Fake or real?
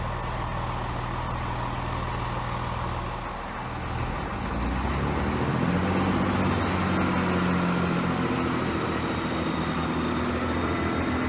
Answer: real